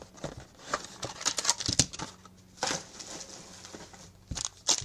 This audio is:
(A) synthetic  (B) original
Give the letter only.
B